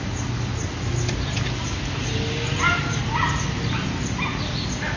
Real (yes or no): yes